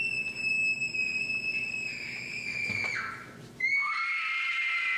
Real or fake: real